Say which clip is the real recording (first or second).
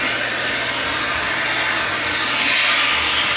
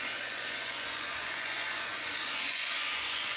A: first